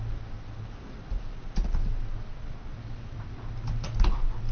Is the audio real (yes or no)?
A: yes